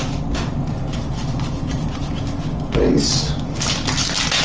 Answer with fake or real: real